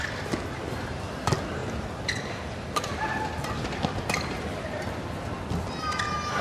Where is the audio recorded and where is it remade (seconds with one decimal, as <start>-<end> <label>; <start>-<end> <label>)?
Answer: 0.0-6.4 recorded